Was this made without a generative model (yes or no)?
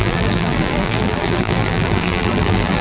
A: no